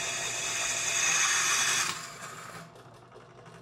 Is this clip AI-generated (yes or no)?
no